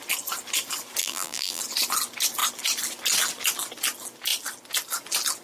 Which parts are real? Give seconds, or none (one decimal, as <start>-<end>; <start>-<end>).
0.0-1.0; 1.6-5.4